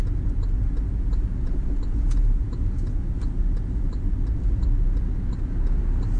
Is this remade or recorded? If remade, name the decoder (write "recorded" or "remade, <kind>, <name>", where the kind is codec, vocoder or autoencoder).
recorded